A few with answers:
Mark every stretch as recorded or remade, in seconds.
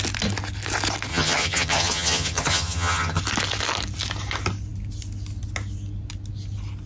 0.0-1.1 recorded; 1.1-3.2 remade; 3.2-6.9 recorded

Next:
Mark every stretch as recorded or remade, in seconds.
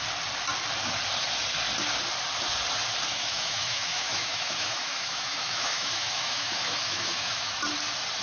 0.0-3.1 recorded; 3.1-7.6 remade; 7.6-8.2 recorded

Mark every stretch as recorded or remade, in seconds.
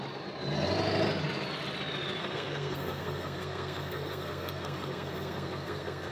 0.0-2.2 recorded; 2.2-6.1 remade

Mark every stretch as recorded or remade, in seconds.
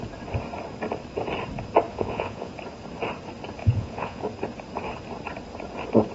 0.0-1.9 recorded; 1.9-2.5 remade; 2.5-3.6 recorded; 3.6-4.2 remade; 4.2-6.1 recorded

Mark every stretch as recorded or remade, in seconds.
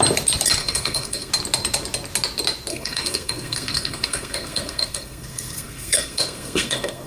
0.0-0.6 recorded; 0.6-1.3 remade; 1.3-2.7 recorded; 2.7-7.1 remade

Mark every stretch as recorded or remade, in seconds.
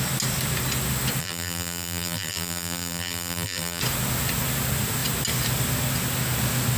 0.0-1.2 recorded; 1.2-3.8 remade; 3.8-6.8 recorded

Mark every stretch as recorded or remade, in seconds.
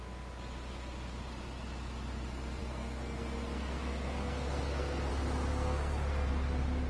0.0-2.6 recorded; 2.6-5.1 remade; 5.1-5.5 recorded; 5.5-6.3 remade; 6.3-6.9 recorded